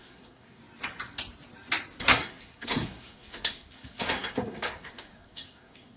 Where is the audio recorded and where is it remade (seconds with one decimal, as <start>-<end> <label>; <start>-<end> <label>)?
0.0-0.6 remade; 0.6-2.0 recorded; 2.0-6.0 remade